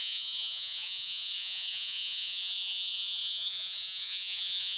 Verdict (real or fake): fake